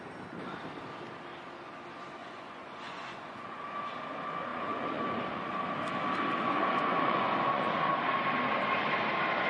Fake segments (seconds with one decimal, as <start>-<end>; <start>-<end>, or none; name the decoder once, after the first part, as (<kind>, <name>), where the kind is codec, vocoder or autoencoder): 2.2-3.9 (vocoder, Vocos); 4.5-5.6; 6.5-7.9